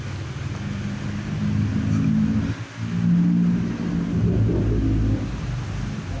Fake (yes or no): no